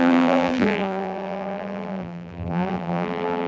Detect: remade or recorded remade